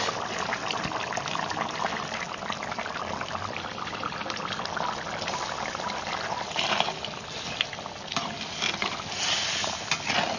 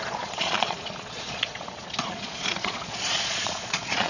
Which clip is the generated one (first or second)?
second